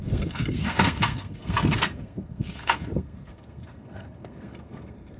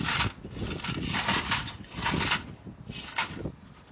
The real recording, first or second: second